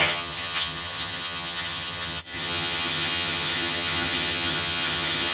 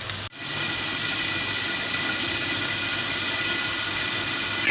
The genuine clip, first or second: second